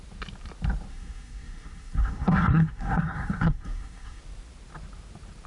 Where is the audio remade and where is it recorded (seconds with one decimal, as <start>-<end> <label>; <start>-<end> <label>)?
0.0-0.9 recorded; 0.9-4.2 remade; 4.2-5.5 recorded